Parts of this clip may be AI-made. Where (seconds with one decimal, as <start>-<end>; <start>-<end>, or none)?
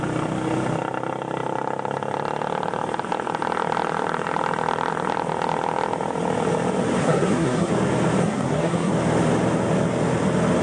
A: 7.0-7.7; 8.2-8.9